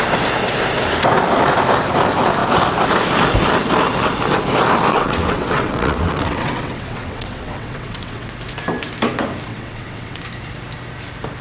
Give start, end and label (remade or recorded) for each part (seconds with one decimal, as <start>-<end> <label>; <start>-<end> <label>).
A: 0.0-4.9 recorded; 4.9-8.3 remade; 8.3-9.5 recorded; 9.5-10.2 remade; 10.2-11.4 recorded